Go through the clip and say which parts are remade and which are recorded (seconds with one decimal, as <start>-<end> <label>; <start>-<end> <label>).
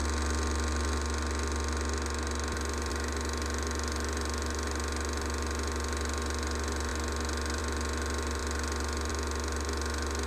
0.0-2.9 recorded; 2.9-6.9 remade; 6.9-7.6 recorded; 7.6-10.3 remade